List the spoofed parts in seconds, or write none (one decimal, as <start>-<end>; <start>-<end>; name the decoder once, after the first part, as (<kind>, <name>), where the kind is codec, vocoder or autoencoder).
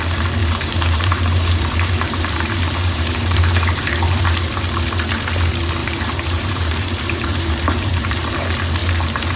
0.4-4.2 (vocoder, BigVGAN v2); 5.8-8.3